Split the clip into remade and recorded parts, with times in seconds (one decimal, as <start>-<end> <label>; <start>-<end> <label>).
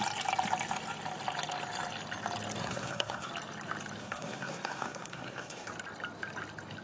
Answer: 0.0-2.6 recorded; 2.6-3.3 remade; 3.3-4.0 recorded; 4.0-5.7 remade; 5.7-6.8 recorded